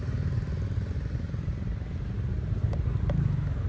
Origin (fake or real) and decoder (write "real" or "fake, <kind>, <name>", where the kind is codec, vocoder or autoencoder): real